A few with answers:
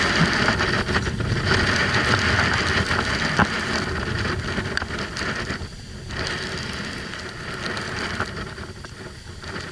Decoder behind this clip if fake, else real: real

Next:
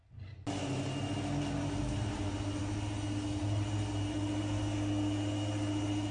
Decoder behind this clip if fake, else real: real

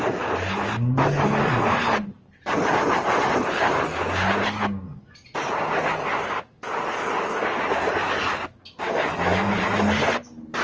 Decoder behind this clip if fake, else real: real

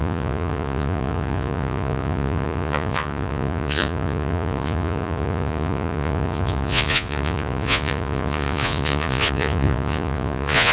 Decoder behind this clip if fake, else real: fake, vocoder, Vocos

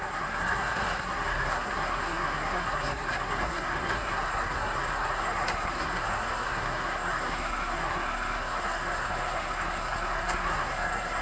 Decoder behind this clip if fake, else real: fake, codec, SNAC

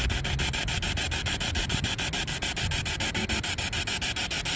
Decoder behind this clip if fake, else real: real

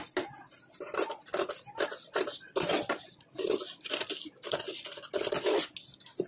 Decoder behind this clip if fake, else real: real